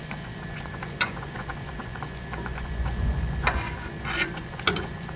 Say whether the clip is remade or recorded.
remade